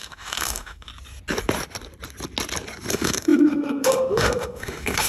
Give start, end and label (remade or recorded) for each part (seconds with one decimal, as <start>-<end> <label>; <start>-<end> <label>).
0.0-0.9 remade; 0.9-2.9 recorded; 2.9-5.1 remade